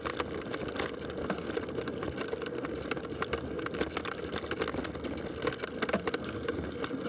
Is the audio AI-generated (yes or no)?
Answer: no